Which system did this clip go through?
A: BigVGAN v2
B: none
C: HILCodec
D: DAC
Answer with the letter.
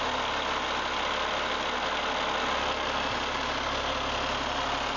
B